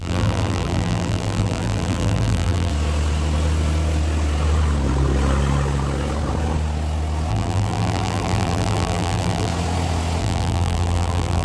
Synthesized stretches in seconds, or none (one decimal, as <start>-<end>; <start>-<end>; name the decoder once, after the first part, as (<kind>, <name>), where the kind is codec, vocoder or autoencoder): 0.0-2.7 (vocoder, BigVGAN v2); 7.3-9.5; 10.2-11.4